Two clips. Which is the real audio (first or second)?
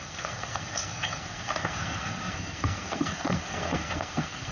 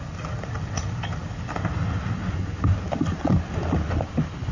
second